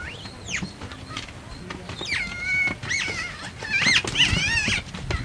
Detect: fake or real real